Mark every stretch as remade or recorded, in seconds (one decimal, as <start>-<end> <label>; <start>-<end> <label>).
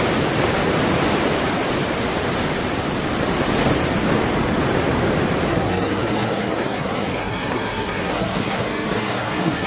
0.0-5.5 recorded; 5.5-9.7 remade